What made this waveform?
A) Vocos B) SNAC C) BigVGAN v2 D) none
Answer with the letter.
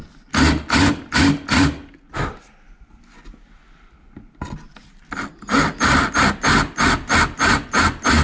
D